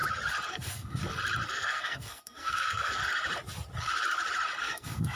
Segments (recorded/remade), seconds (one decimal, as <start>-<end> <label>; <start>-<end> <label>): 0.0-0.5 recorded; 0.5-1.0 remade; 1.0-1.5 recorded; 1.5-3.0 remade; 3.0-4.6 recorded; 4.6-5.2 remade

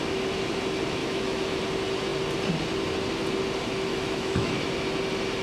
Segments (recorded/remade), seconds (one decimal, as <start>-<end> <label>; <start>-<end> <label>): 0.0-1.0 recorded; 1.0-1.6 remade; 1.6-3.9 recorded; 3.9-4.5 remade; 4.5-5.4 recorded

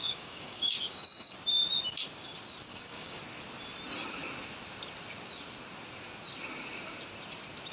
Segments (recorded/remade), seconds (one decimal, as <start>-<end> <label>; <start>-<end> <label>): 0.0-1.3 remade; 1.3-2.7 recorded; 2.7-3.2 remade; 3.2-7.7 recorded

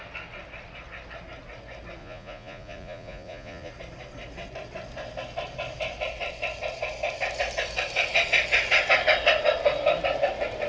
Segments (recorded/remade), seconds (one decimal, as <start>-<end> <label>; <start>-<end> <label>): 0.0-2.0 recorded; 2.0-3.7 remade; 3.7-10.7 recorded

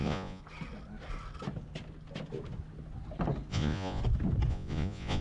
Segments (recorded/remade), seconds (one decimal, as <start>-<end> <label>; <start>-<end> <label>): 0.0-0.4 remade; 0.4-3.5 recorded; 3.5-4.0 remade; 4.0-4.5 recorded; 4.5-5.2 remade

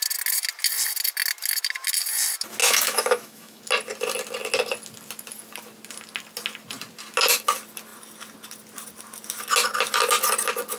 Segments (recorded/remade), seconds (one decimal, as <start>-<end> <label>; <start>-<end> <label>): 0.0-2.6 recorded; 2.6-3.6 remade; 3.6-10.8 recorded

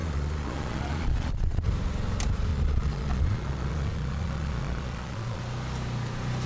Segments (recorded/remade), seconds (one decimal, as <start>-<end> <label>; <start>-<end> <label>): 0.0-1.7 remade; 1.7-2.5 recorded; 2.5-5.4 remade; 5.4-6.5 recorded